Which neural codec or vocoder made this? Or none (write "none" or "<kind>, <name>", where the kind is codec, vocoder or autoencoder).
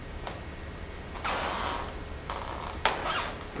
none